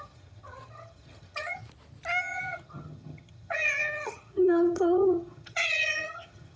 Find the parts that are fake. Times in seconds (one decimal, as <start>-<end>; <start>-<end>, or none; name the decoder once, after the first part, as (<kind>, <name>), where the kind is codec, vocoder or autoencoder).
0.0-1.6 (vocoder, HiFi-GAN); 2.2-6.6